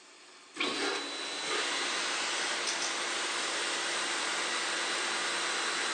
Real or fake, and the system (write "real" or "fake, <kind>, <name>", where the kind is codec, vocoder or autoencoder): real